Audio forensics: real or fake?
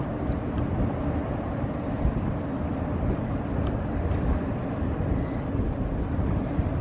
real